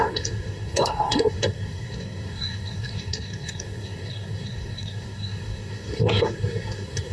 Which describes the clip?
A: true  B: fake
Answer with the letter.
B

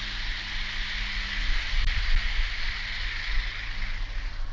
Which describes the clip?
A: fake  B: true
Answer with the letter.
B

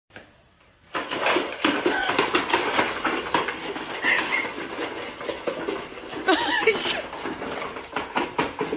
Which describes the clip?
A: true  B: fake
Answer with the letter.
A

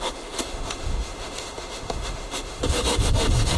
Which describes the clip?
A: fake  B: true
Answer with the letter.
A